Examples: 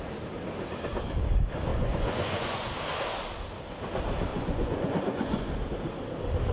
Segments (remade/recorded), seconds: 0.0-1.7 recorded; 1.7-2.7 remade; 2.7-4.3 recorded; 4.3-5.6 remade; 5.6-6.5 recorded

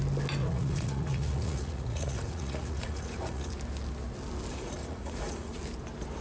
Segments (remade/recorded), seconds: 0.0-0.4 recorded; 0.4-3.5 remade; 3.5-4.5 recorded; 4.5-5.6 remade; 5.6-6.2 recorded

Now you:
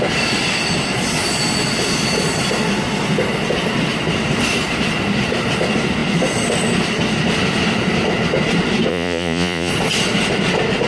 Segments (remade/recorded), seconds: 0.0-8.9 recorded; 8.9-9.7 remade; 9.7-10.9 recorded

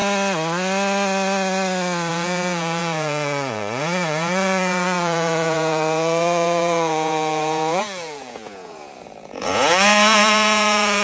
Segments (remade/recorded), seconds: 0.0-2.1 recorded; 2.1-11.0 remade